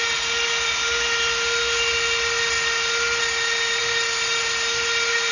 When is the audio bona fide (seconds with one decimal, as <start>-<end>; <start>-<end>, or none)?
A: 0.0-5.3